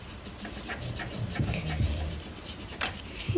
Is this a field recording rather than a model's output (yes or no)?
no